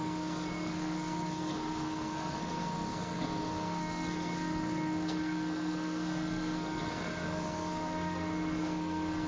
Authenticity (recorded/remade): remade